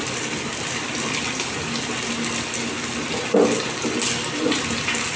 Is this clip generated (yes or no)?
no